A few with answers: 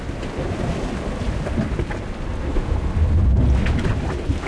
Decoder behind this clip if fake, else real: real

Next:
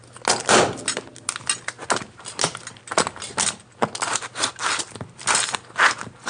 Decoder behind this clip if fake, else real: real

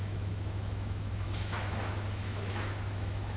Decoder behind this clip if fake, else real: fake, autoencoder, DAC-VAE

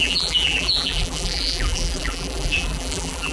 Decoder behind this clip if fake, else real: fake, vocoder, BigVGAN v2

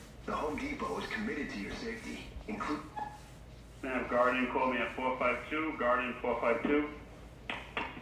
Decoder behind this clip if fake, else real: real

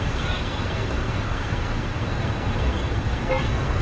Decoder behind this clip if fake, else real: fake, codec, SNAC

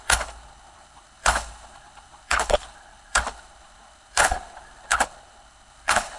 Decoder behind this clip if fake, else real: fake, codec, HILCodec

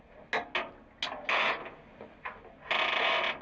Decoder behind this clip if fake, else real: real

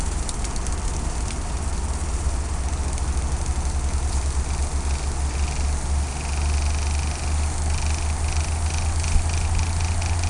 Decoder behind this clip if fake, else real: real